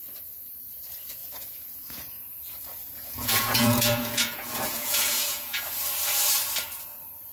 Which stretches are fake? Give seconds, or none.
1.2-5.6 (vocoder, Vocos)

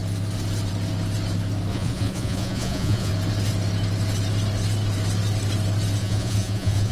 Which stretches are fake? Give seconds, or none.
1.7-3.1 (vocoder, Vocos); 6.0-6.9

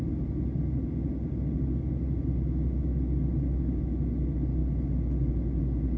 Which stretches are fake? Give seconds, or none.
none